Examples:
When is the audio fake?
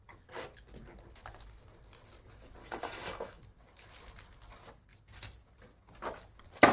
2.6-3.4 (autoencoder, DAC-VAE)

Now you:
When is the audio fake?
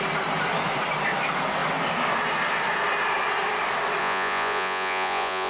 4.0-5.5 (vocoder, Vocos)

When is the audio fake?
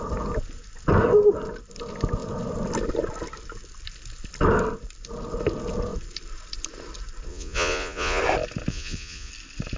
7.3-8.2 (vocoder, Vocos); 8.7-9.3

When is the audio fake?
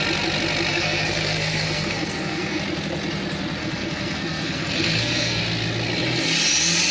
0.7-2.6 (codec, SNAC); 3.6-5.4